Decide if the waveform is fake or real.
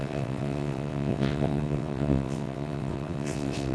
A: fake